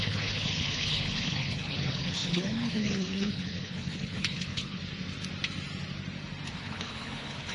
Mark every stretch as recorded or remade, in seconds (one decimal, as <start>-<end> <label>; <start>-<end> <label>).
0.0-4.8 remade; 4.8-6.5 recorded; 6.5-7.5 remade